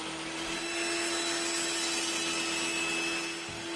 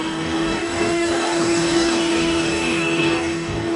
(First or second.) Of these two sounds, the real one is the first